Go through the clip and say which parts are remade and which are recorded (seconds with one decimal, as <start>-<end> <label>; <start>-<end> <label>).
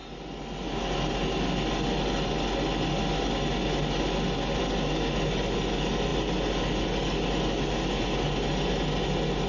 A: 0.0-9.5 recorded